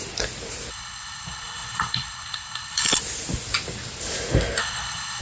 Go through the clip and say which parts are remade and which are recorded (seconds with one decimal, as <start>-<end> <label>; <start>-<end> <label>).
0.0-0.7 recorded; 0.7-3.0 remade; 3.0-4.6 recorded; 4.6-5.2 remade